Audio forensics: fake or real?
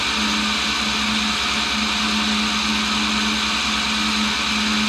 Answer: real